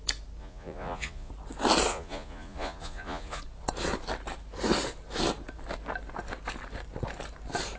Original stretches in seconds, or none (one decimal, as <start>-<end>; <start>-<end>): 0.0-0.4; 1.3-1.9; 3.4-7.8